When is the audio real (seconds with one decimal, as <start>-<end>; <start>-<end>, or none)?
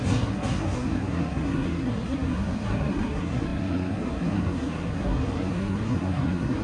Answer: none